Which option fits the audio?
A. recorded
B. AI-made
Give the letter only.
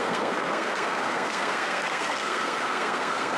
B